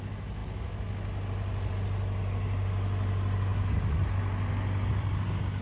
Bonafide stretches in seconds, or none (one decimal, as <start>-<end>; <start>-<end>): 0.0-5.6